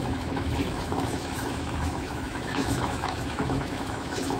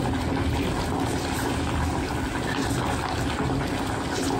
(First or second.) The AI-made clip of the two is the first